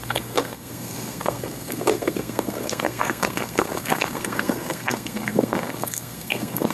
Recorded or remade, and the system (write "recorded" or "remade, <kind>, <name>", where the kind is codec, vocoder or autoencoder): remade, codec, SNAC